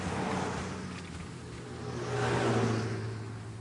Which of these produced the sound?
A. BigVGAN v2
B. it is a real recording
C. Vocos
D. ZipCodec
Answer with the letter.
B